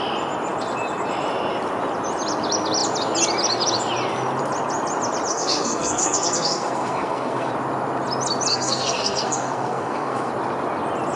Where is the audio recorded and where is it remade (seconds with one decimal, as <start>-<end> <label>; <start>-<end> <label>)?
0.0-5.3 recorded; 5.3-7.5 remade; 7.5-8.5 recorded; 8.5-10.3 remade; 10.3-11.2 recorded